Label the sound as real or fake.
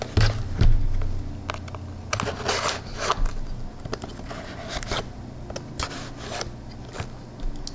real